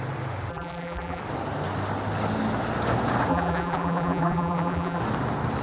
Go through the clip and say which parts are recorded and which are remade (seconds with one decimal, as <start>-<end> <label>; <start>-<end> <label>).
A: 0.0-0.5 recorded; 0.5-1.2 remade; 1.2-3.3 recorded; 3.3-5.0 remade; 5.0-5.6 recorded

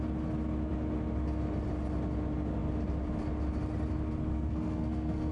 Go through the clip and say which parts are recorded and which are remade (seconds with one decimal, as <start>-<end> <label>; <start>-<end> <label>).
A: 0.0-4.3 recorded; 4.3-5.3 remade

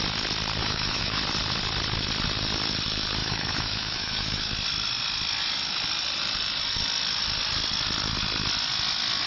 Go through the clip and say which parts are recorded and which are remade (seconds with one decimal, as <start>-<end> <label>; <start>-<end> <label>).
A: 0.0-0.6 recorded; 0.6-1.2 remade; 1.2-3.2 recorded; 3.2-4.5 remade; 4.5-9.3 recorded

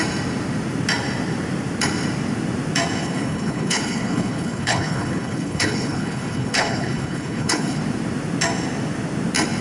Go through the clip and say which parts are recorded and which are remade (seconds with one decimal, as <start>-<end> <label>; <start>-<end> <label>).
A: 0.0-3.0 recorded; 3.0-7.8 remade; 7.8-9.6 recorded

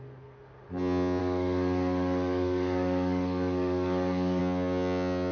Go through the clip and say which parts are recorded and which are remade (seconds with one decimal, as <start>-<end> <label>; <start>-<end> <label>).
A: 0.0-1.2 recorded; 1.2-4.4 remade; 4.4-5.3 recorded

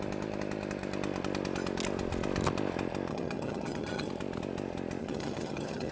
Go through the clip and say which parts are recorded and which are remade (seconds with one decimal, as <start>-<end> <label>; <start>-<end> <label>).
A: 0.0-3.1 recorded; 3.1-4.1 remade; 4.1-5.0 recorded; 5.0-5.9 remade

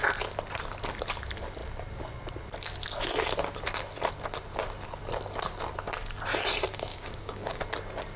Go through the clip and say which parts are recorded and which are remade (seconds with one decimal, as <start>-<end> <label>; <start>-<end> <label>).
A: 0.0-6.9 recorded; 6.9-7.6 remade; 7.6-8.2 recorded

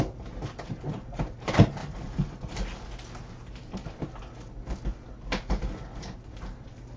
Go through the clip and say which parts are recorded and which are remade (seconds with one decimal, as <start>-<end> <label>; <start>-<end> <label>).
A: 0.0-1.8 recorded; 1.8-2.6 remade; 2.6-7.0 recorded